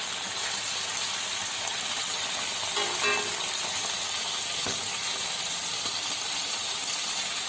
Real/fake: real